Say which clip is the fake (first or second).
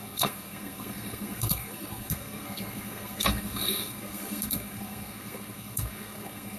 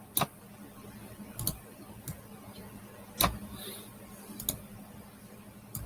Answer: first